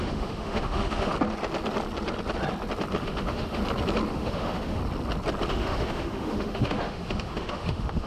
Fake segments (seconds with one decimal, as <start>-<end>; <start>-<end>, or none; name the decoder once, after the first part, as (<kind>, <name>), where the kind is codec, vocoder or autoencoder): 0.0-1.1 (autoencoder, DAC-VAE); 3.0-3.6; 4.1-4.8; 5.5-8.1